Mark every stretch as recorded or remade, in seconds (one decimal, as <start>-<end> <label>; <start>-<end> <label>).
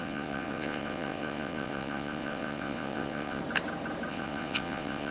0.0-3.4 remade; 3.4-4.1 recorded; 4.1-5.1 remade